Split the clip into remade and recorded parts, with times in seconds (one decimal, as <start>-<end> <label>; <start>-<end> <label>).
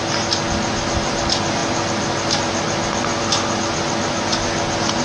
0.0-5.0 recorded